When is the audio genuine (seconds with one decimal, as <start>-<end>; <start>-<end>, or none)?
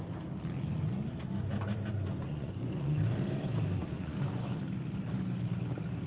0.0-2.3; 3.0-3.8; 4.6-6.1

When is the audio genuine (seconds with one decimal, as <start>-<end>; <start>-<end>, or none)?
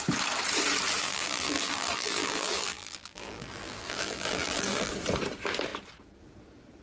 0.0-1.0; 4.9-6.8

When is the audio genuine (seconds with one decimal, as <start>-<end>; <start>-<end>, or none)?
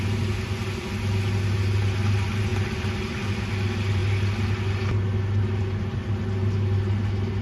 0.0-7.4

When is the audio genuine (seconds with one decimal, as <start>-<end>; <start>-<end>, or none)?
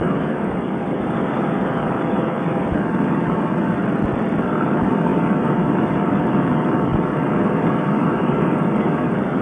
3.8-4.4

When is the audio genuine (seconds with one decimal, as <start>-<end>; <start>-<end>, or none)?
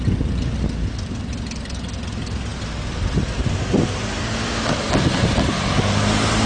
0.0-6.5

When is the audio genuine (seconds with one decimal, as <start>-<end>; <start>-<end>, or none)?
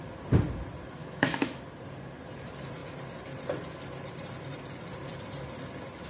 0.0-1.0; 1.6-6.1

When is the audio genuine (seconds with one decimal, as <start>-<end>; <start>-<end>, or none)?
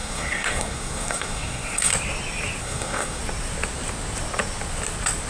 1.9-2.6; 3.2-5.3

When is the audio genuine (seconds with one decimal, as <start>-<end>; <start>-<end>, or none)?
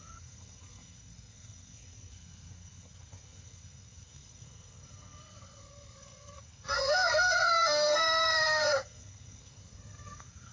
none